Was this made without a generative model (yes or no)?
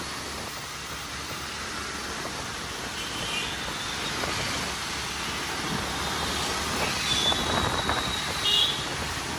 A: yes